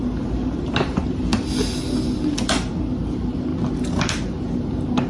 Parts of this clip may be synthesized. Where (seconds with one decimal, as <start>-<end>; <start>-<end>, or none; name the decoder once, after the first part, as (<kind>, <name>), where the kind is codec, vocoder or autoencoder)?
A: 0.0-1.4 (vocoder, BigVGAN v2); 2.7-3.5; 4.4-5.1